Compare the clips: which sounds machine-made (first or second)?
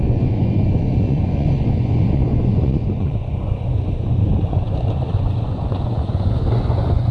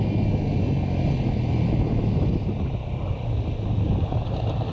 first